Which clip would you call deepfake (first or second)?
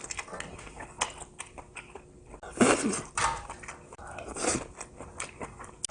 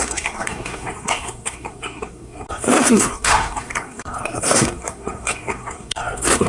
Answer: second